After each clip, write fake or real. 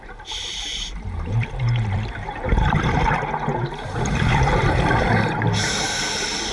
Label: fake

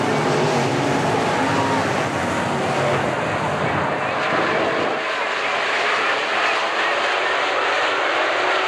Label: real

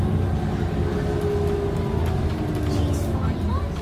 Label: real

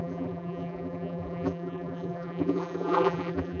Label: fake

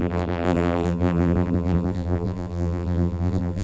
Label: fake